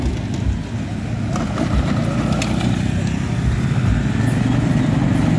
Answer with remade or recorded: recorded